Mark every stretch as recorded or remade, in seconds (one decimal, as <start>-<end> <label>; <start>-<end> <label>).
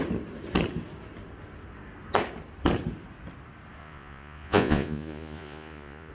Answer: 0.0-3.8 recorded; 3.8-6.1 remade